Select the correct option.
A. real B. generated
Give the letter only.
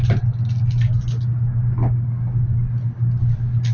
A